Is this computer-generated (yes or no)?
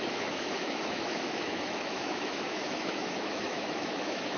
yes